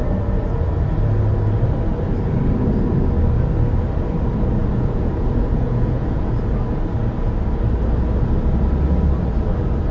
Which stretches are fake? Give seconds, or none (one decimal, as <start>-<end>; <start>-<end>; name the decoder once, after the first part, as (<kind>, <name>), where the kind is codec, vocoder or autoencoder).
4.6-6.3 (vocoder, Vocos)